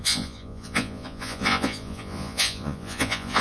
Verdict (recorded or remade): remade